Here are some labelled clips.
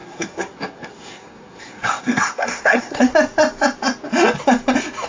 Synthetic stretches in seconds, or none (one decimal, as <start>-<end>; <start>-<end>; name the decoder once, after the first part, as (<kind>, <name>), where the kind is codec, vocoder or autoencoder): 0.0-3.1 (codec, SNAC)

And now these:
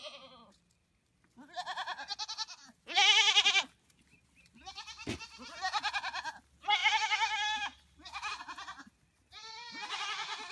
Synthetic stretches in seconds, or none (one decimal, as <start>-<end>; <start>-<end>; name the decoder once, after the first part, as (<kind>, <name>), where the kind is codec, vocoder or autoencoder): none

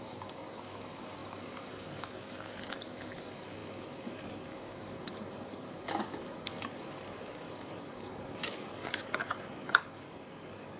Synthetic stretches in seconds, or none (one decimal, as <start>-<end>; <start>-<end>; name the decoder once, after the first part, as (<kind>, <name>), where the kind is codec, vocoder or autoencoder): 0.0-10.8 (codec, DAC)

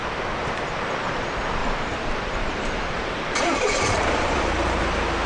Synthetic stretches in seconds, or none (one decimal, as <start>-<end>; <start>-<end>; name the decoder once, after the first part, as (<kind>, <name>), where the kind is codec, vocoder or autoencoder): 1.6-4.5 (vocoder, BigVGAN v2)

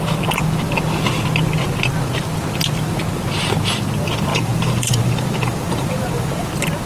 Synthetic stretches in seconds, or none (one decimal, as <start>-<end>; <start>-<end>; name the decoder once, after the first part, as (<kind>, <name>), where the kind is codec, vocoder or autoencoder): 4.3-6.5 (vocoder, BigVGAN v2)

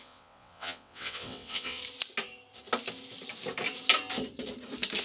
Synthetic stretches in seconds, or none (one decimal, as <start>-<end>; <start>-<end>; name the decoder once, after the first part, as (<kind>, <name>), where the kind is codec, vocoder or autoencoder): 0.0-1.8 (vocoder, WaveNeXt)

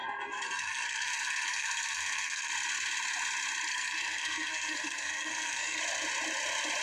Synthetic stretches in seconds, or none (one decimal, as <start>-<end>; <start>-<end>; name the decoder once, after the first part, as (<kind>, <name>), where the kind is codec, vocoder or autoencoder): 0.0-2.5 (codec, SNAC); 3.7-5.8